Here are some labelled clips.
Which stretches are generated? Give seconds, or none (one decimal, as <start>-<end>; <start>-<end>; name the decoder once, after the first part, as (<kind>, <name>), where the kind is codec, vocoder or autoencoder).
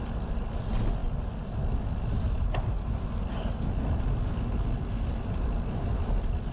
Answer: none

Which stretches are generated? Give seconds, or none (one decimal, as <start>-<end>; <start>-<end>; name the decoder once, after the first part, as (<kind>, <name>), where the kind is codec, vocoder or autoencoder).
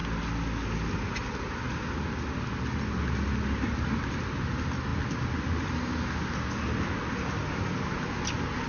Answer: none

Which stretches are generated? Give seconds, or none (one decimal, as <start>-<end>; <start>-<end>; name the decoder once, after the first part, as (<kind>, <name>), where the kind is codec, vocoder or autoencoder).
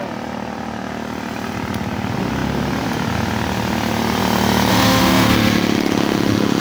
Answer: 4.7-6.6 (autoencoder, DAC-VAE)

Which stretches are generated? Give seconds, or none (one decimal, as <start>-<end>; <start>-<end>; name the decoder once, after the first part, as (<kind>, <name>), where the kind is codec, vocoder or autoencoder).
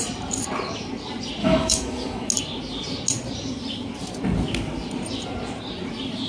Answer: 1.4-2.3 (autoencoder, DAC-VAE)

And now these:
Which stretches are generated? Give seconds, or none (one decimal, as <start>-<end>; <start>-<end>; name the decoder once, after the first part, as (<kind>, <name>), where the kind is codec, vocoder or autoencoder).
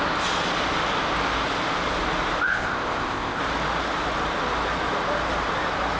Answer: 2.5-3.4 (codec, ZipCodec)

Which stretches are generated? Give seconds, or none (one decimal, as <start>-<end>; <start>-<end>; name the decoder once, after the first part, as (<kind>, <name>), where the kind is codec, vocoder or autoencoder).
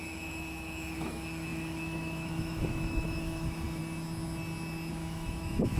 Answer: 0.0-3.8 (autoencoder, DAC-VAE); 4.9-5.8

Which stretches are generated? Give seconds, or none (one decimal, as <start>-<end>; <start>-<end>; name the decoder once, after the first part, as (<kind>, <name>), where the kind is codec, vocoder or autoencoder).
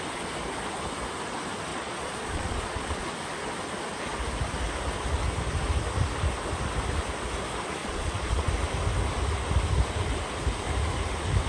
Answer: 1.7-3.0 (vocoder, Vocos); 7.8-8.5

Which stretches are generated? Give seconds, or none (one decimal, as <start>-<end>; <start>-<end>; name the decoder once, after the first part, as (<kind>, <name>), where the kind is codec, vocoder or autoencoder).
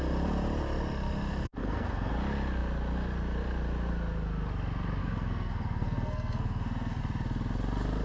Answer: 1.6-2.1 (codec, SNAC); 5.0-7.0